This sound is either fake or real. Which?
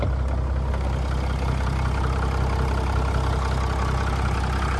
real